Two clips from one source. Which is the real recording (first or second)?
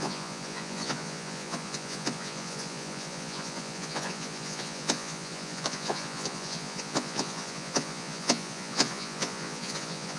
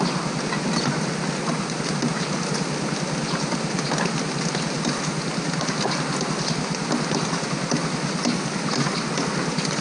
second